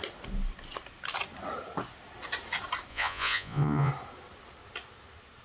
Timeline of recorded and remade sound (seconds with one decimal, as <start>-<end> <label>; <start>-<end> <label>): 0.0-2.9 recorded; 2.9-3.9 remade; 3.9-5.4 recorded